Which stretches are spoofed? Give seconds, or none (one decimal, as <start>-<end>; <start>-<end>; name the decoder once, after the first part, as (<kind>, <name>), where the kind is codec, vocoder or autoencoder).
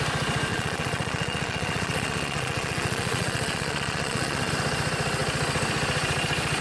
0.5-4.5 (vocoder, Vocos)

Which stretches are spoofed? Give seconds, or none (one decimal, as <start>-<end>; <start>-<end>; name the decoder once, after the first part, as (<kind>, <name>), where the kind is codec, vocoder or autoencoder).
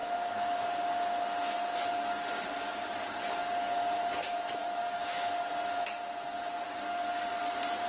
4.6-5.5 (autoencoder, DAC-VAE)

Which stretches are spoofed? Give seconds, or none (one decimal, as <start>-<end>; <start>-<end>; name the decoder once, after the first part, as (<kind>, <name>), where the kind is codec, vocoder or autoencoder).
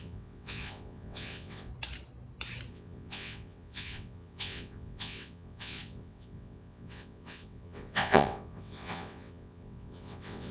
0.0-1.7 (vocoder, WaveNeXt); 2.7-10.5